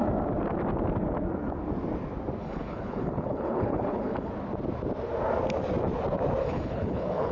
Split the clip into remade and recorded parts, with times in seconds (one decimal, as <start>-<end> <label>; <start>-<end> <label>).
0.0-2.4 recorded; 2.4-4.3 remade; 4.3-6.4 recorded; 6.4-7.3 remade